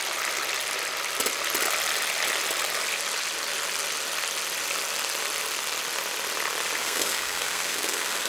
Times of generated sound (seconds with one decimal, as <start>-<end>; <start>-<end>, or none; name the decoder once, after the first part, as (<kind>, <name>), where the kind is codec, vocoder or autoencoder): 6.8-8.3 (codec, SNAC)